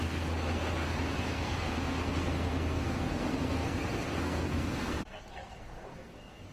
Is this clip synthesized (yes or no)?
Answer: yes